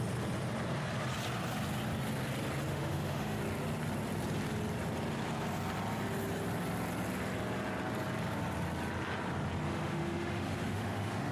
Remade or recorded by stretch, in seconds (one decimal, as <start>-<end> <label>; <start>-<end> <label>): 0.0-2.7 recorded; 2.7-3.4 remade; 3.4-9.7 recorded; 9.7-11.3 remade